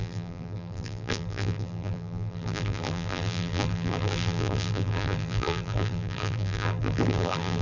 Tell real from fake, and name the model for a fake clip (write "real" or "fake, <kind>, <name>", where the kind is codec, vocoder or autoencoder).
fake, vocoder, BigVGAN v2